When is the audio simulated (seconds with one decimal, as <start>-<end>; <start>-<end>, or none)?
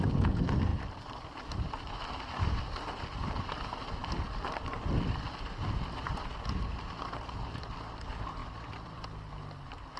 0.0-4.0; 4.6-10.0